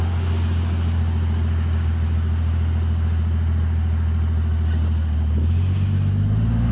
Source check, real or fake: real